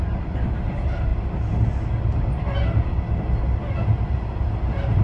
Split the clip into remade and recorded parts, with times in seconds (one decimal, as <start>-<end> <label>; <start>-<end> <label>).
0.0-1.1 remade; 1.1-4.1 recorded; 4.1-5.0 remade